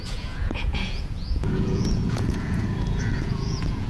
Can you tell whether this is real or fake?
fake